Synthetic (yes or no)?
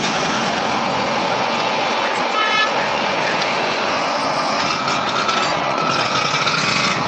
yes